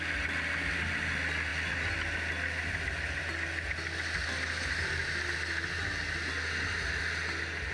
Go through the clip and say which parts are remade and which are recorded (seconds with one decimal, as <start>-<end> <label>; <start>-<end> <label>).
0.0-7.7 recorded